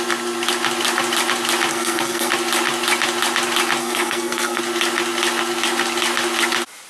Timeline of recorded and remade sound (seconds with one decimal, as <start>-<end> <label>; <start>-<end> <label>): 0.0-1.7 recorded; 1.7-2.3 remade; 2.3-3.8 recorded; 3.8-4.6 remade; 4.6-6.9 recorded